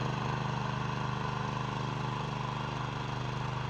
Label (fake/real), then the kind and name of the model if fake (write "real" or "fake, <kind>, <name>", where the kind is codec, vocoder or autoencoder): real